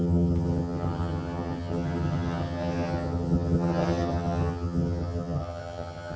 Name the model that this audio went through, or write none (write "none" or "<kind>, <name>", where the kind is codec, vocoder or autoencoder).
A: vocoder, HiFi-GAN